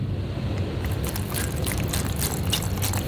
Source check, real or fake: real